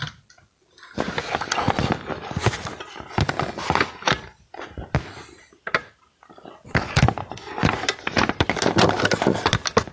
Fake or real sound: real